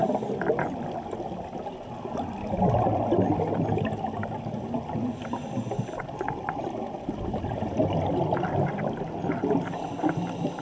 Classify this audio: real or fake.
real